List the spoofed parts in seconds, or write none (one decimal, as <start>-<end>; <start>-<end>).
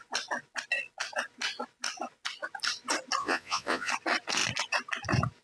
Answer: 3.2-3.9